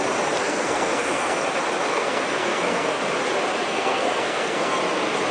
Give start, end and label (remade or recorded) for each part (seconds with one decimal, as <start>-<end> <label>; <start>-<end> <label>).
0.0-0.4 recorded; 0.4-1.4 remade; 1.4-1.9 recorded; 1.9-3.0 remade; 3.0-3.7 recorded; 3.7-4.8 remade; 4.8-5.3 recorded